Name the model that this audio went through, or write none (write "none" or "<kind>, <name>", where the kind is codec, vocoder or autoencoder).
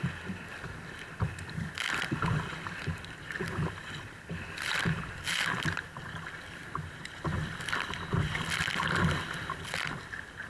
none